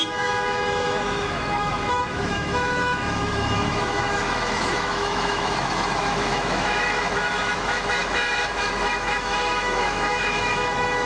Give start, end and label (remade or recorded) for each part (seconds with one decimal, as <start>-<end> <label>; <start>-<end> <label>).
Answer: 0.0-11.1 remade